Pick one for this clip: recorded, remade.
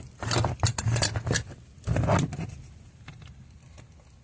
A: recorded